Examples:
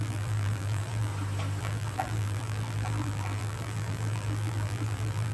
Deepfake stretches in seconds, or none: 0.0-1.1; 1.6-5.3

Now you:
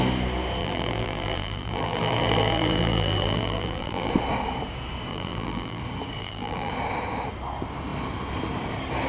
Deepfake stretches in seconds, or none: 0.6-4.1; 5.1-5.8; 6.2-6.7

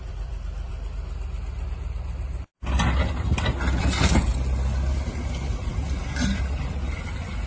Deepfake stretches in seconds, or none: 0.0-0.7; 3.8-4.3; 4.9-7.5

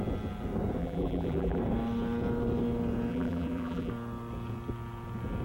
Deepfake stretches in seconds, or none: 0.8-1.6; 3.1-3.9

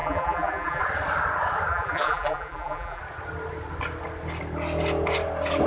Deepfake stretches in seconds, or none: 0.0-0.8; 1.7-3.0

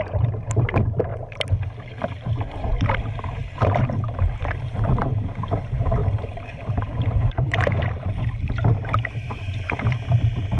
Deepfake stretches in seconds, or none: 0.0-1.1; 1.8-10.6

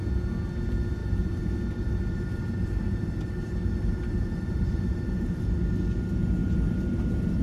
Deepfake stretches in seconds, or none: 1.0-5.4; 6.4-7.4